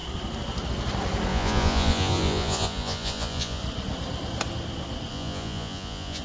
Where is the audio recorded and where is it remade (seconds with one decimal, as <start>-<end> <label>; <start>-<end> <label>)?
0.0-1.3 recorded; 1.3-3.6 remade; 3.6-5.1 recorded; 5.1-6.2 remade